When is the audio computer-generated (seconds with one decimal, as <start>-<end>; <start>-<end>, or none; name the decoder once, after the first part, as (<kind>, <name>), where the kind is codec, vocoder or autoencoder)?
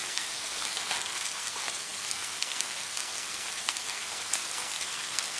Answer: 0.0-5.4 (codec, SNAC)